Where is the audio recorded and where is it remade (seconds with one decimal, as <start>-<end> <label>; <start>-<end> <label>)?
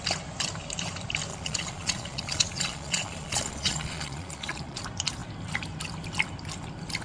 0.0-1.3 recorded; 1.3-4.8 remade; 4.8-7.0 recorded